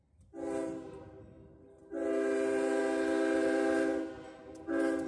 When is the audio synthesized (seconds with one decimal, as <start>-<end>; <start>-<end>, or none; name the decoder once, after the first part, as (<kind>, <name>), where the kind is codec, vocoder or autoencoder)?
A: none